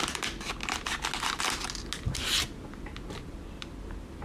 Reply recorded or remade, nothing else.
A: recorded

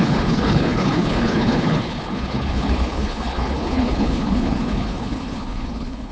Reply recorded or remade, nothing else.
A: remade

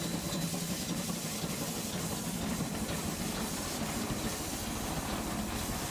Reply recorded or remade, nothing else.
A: recorded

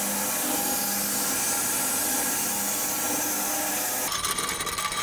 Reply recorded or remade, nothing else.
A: recorded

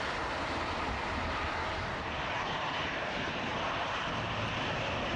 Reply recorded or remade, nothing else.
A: remade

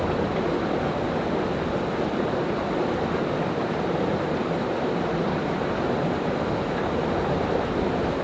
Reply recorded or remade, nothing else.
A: recorded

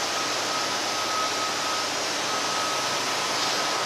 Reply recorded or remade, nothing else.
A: recorded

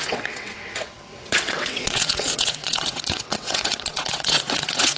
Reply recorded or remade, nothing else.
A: remade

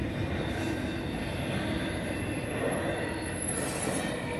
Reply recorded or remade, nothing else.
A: recorded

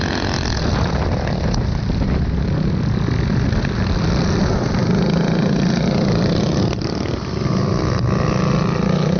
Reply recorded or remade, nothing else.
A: recorded